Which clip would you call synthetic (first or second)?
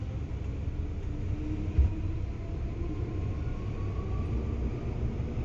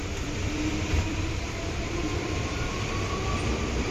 second